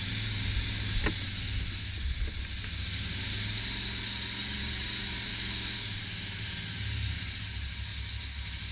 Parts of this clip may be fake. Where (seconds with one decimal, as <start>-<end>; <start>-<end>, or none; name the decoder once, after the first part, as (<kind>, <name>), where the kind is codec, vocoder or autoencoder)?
0.0-0.5 (vocoder, BigVGAN v2); 4.6-5.3; 6.4-7.9